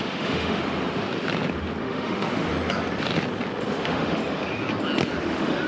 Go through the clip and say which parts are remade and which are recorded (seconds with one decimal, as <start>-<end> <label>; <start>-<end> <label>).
0.0-0.6 remade; 0.6-1.8 recorded; 1.8-2.5 remade; 2.5-3.7 recorded; 3.7-4.2 remade; 4.2-5.2 recorded; 5.2-5.7 remade